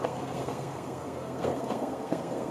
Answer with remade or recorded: remade